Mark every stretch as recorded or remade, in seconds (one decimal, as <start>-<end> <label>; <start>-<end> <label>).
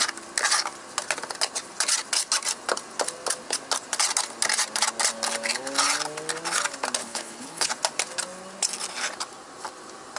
0.0-7.0 recorded; 7.0-7.7 remade; 7.7-10.2 recorded